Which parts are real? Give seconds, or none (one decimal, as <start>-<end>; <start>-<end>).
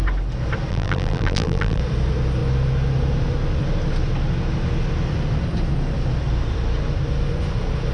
0.0-0.7; 1.8-7.9